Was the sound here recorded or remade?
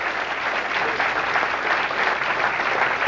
recorded